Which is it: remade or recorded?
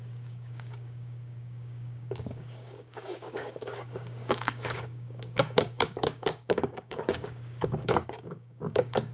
remade